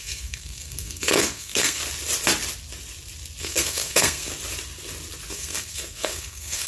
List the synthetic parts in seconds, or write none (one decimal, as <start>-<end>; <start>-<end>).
0.0-1.8; 3.4-4.3; 5.3-6.7